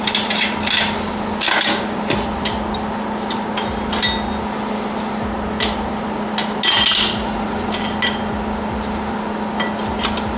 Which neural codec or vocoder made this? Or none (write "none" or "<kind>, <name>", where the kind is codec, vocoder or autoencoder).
none